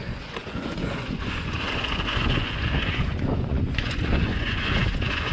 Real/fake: fake